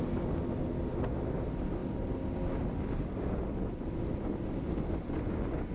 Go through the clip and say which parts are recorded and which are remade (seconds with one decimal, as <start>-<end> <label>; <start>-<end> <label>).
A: 0.0-5.7 recorded